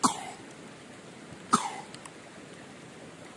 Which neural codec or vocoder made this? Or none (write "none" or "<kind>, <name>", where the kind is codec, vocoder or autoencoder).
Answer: none